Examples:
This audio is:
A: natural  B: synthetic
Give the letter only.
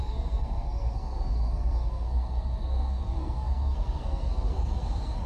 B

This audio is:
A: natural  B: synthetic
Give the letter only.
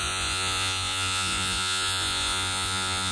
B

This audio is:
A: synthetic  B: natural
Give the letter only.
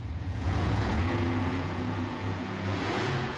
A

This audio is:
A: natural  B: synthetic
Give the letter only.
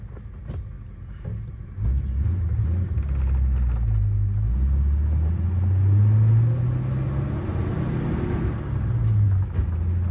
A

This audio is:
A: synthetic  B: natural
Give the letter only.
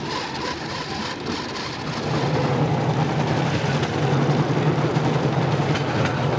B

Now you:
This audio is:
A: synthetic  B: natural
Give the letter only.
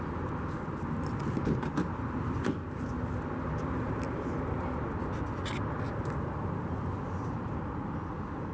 B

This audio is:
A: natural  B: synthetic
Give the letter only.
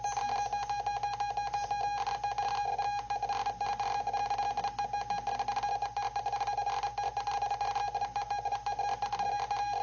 A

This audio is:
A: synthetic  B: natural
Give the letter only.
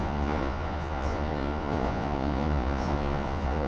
A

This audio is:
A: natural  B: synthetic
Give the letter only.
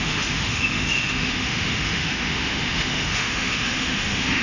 B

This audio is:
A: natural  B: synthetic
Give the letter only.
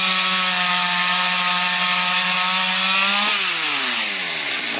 A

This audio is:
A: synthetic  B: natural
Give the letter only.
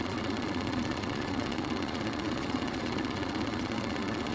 A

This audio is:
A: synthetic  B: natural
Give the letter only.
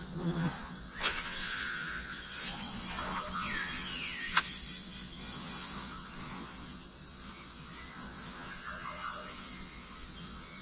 A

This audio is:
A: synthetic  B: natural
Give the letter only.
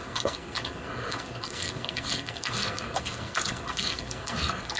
A